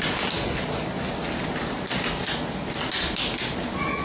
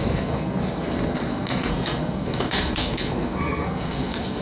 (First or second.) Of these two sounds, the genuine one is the first